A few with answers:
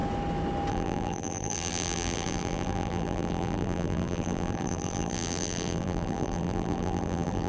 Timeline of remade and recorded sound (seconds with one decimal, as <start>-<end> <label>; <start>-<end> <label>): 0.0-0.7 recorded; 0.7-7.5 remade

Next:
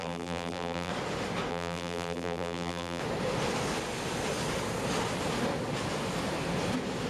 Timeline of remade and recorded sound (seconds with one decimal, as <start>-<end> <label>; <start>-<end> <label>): 0.0-0.9 remade; 0.9-1.5 recorded; 1.5-3.0 remade; 3.0-7.1 recorded

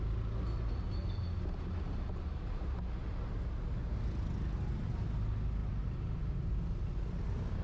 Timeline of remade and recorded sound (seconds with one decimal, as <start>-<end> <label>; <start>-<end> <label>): 0.0-7.6 recorded

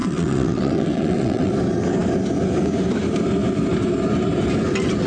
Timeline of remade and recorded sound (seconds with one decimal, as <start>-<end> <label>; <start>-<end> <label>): 0.0-1.5 remade; 1.5-5.1 recorded

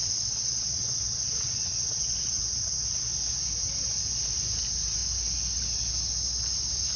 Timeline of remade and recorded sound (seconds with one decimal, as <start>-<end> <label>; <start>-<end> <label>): 0.0-2.4 remade; 2.4-7.0 recorded

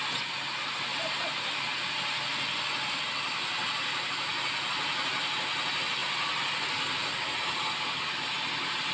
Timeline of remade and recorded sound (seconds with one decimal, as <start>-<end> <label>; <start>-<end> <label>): 0.0-8.9 recorded

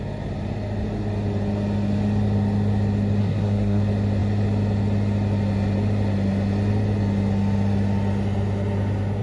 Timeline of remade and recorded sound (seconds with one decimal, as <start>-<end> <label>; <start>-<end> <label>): 0.0-3.2 recorded; 3.2-3.8 remade; 3.8-9.2 recorded